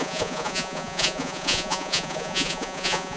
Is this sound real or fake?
fake